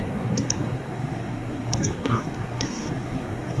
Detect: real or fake fake